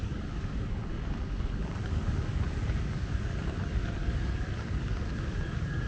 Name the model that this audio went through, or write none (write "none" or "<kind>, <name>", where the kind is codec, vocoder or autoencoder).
codec, DAC